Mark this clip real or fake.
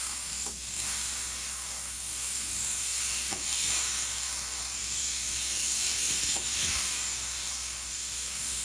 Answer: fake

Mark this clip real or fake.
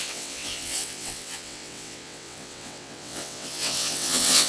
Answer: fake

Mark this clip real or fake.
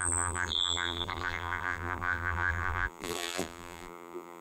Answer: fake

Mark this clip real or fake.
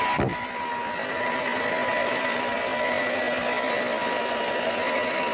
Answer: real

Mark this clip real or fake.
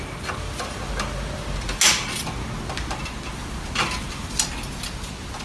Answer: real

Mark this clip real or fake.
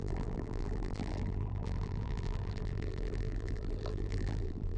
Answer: fake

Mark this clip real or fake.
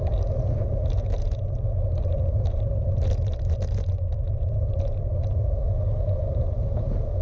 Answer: fake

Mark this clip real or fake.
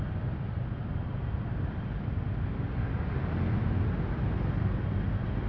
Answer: real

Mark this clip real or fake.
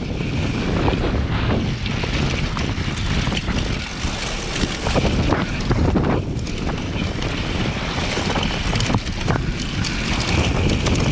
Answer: real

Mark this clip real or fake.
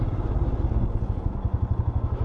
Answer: real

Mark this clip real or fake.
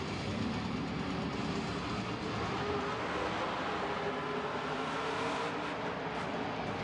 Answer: real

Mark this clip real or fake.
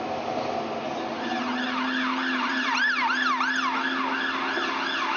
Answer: real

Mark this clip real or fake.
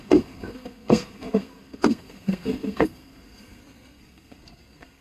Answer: fake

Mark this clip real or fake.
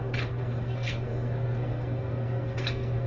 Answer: fake